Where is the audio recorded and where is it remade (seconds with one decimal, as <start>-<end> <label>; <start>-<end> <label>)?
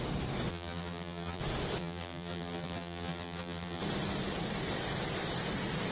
0.0-0.5 recorded; 0.5-1.4 remade; 1.4-1.8 recorded; 1.8-3.8 remade; 3.8-5.9 recorded